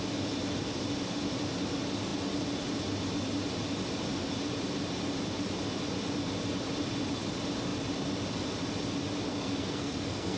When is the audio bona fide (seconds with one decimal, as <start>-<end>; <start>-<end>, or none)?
0.0-9.3